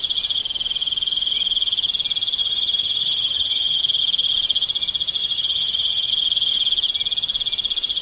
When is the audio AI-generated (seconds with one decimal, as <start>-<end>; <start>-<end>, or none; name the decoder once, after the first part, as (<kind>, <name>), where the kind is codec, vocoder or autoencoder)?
2.4-3.8 (vocoder, HiFi-GAN); 5.2-6.1